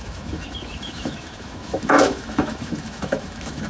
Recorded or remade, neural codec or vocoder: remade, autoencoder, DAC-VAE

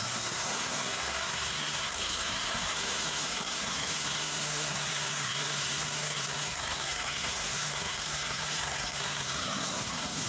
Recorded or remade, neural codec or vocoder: remade, codec, SNAC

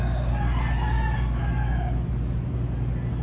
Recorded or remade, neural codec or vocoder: recorded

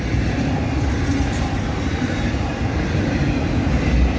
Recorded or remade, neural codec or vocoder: recorded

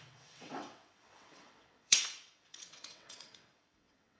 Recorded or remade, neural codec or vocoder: remade, vocoder, WaveNeXt